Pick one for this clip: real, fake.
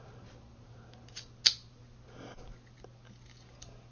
real